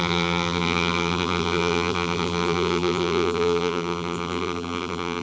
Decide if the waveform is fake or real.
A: fake